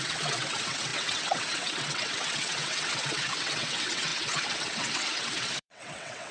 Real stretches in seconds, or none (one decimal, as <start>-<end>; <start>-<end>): none